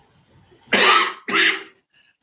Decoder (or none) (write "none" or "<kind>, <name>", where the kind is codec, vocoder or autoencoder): none